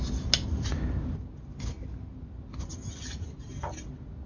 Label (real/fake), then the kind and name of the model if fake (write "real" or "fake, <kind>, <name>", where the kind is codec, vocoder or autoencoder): real